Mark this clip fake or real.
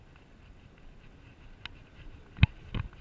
real